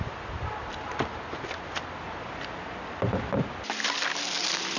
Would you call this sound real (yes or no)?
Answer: yes